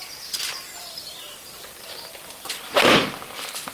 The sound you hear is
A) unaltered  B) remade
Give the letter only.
B